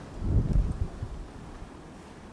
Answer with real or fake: fake